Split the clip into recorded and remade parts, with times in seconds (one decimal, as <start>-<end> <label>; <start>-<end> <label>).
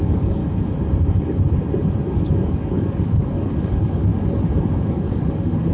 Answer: 0.0-0.4 remade; 0.4-2.1 recorded; 2.1-4.1 remade; 4.1-4.9 recorded; 4.9-5.7 remade